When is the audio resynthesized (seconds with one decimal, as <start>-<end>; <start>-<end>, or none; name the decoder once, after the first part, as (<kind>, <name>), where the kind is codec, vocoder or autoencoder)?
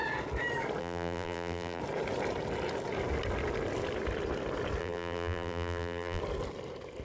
0.8-1.8 (vocoder, BigVGAN v2); 4.8-6.2